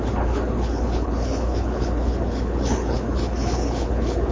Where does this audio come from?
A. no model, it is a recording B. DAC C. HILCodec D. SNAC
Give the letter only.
C